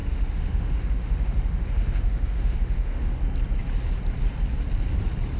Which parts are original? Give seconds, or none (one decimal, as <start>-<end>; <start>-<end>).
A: 3.2-5.4